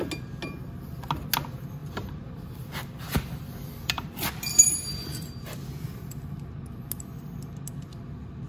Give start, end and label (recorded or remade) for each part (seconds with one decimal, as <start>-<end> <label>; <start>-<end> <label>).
0.0-1.8 recorded; 1.8-6.1 remade; 6.1-8.5 recorded